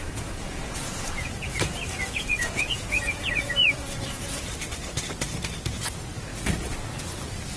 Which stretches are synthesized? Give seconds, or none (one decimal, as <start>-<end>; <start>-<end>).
0.0-4.5